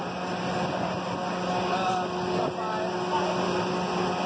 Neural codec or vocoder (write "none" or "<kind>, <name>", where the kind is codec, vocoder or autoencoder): none